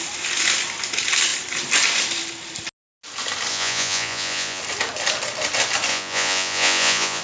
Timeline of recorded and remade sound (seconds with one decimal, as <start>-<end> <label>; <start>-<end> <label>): 0.0-3.5 recorded; 3.5-4.6 remade; 4.6-5.9 recorded; 5.9-7.2 remade